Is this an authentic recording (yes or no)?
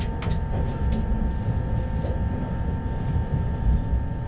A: yes